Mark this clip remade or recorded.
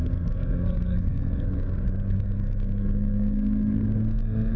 remade